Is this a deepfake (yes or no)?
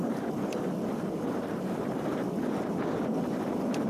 no